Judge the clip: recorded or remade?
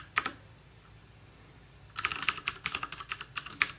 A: recorded